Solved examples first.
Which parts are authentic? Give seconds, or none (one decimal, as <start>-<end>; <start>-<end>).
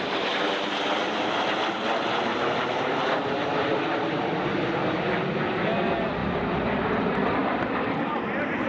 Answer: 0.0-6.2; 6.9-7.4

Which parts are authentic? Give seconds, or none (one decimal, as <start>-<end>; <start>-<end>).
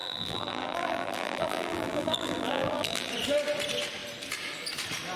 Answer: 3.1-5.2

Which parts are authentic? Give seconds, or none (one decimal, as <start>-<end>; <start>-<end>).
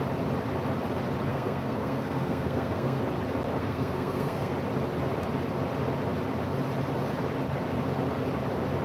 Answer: 0.0-1.3; 3.0-3.6; 4.5-8.8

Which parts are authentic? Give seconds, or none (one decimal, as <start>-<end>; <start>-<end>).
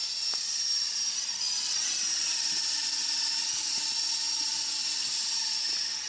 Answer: 0.0-6.1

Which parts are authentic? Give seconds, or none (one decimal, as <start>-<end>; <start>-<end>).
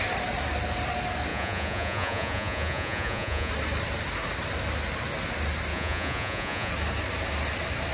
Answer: 0.0-1.3; 3.5-5.7; 6.7-7.9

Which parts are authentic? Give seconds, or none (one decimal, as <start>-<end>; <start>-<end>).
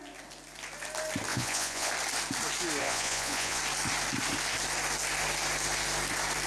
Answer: 0.0-1.3; 1.9-2.8; 3.6-6.5